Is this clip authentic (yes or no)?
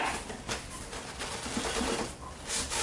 yes